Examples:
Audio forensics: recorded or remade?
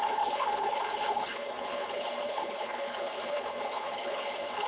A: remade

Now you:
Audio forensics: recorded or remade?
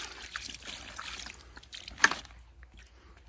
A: recorded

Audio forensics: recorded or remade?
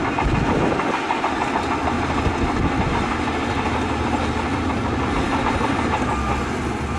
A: recorded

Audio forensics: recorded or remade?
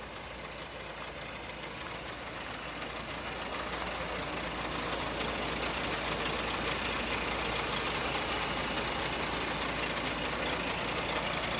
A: recorded